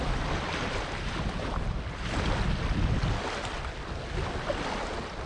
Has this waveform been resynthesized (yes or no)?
no